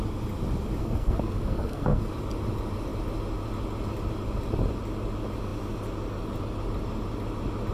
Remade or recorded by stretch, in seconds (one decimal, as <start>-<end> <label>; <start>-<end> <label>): 0.0-0.8 recorded; 0.8-2.1 remade; 2.1-7.7 recorded